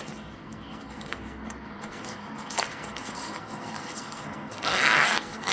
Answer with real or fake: fake